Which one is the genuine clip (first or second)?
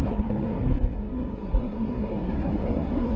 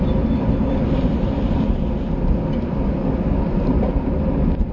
second